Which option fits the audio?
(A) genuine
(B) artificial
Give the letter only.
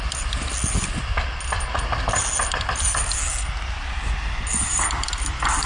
A